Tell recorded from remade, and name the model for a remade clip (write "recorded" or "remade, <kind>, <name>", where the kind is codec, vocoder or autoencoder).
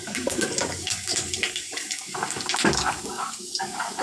remade, codec, DAC